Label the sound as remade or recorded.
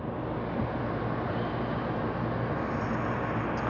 recorded